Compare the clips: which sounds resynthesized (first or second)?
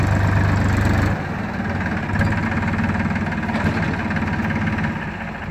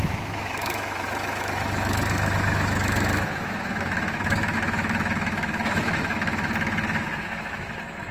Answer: second